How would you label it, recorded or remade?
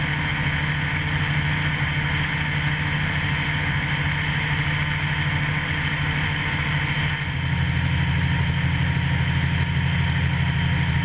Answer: recorded